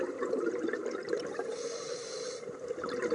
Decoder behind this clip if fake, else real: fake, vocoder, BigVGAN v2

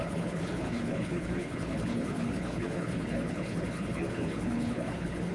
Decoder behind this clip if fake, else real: fake, codec, HILCodec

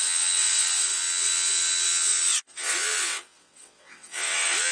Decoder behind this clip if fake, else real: fake, vocoder, WaveNeXt